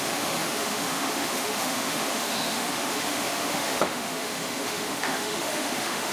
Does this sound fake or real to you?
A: fake